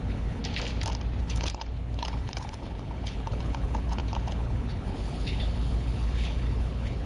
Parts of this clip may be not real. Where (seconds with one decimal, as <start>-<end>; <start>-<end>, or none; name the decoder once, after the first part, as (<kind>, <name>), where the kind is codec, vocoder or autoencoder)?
0.0-0.4 (codec, HILCodec); 1.2-7.1